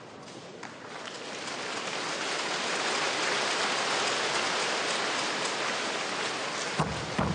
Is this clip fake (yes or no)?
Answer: no